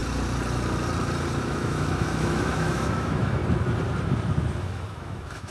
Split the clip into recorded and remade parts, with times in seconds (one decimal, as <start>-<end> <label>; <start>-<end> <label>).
0.0-1.4 recorded; 1.4-3.4 remade; 3.4-4.6 recorded; 4.6-5.5 remade